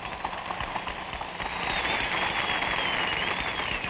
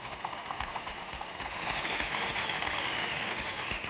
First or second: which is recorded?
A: first